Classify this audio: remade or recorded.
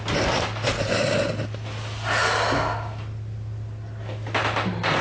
recorded